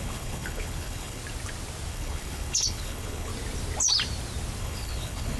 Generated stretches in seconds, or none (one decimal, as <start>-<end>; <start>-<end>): 0.0-1.2; 1.9-3.3; 4.6-5.4